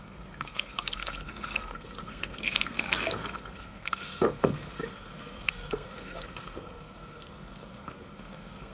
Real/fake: fake